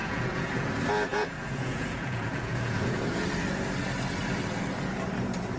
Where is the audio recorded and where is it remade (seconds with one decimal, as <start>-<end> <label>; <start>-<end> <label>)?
0.0-0.5 remade; 0.5-1.1 recorded; 1.1-3.0 remade; 3.0-5.6 recorded